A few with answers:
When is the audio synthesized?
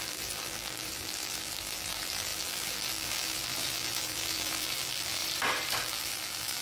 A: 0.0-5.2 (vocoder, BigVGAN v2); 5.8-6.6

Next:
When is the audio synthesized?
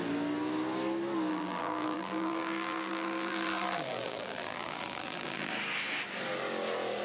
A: 1.3-5.5 (vocoder, BigVGAN v2)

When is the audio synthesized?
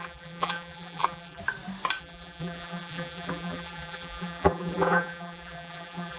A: 0.0-1.4 (vocoder, BigVGAN v2); 2.0-6.2